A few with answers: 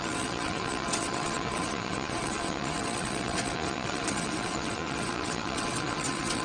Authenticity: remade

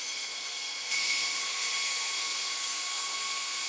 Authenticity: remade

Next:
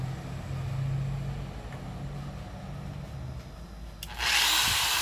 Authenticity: recorded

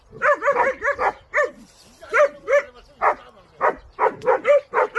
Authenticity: recorded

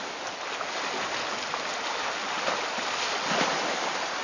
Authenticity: recorded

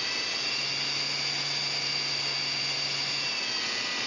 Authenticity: recorded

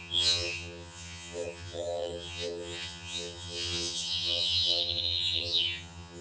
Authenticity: remade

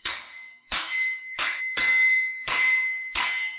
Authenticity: remade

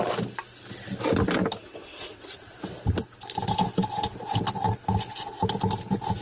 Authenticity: recorded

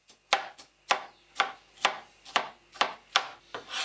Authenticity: recorded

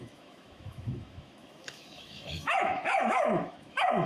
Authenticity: remade